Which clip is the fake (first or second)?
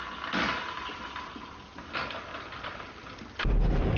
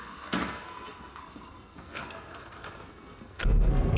second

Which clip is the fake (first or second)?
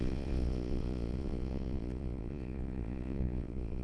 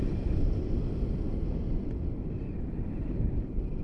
first